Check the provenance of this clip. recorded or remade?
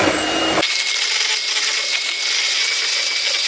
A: remade